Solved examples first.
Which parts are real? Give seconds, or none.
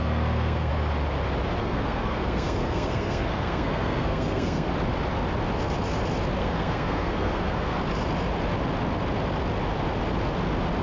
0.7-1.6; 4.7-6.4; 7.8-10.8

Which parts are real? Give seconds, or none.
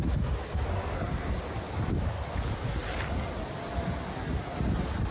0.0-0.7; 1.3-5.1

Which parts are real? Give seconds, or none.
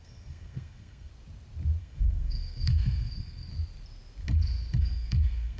1.1-1.8; 3.5-4.8